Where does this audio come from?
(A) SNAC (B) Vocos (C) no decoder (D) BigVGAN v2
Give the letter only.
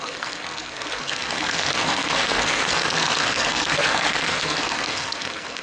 A